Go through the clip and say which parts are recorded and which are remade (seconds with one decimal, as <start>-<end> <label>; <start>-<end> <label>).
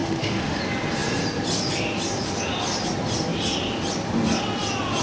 0.0-0.6 remade; 0.6-5.0 recorded